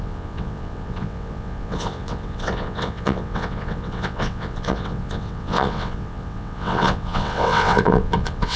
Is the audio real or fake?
fake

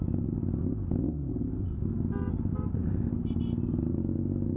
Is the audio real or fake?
real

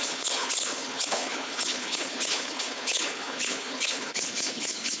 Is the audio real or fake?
fake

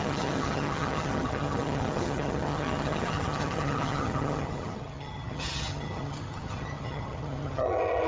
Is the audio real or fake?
fake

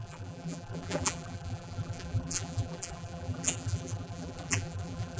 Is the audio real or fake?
fake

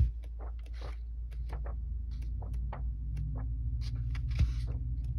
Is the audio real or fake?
real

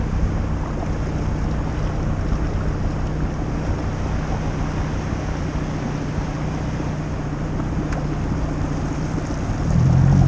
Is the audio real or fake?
real